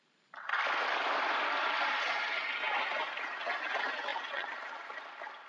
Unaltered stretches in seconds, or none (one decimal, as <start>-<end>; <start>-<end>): 0.0-4.1; 4.9-5.5